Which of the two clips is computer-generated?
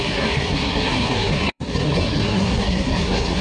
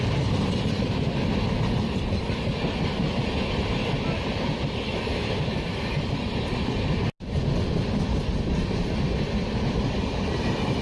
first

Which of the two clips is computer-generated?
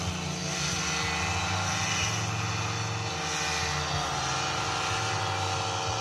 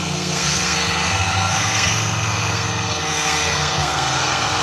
second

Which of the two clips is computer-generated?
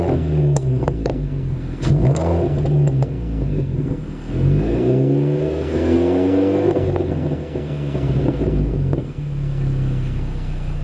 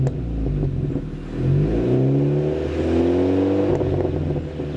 first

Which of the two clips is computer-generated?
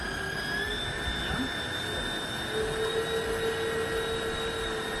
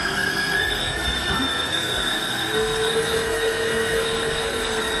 second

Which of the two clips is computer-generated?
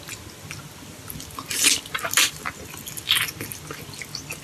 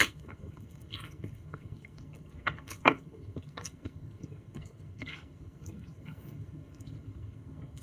second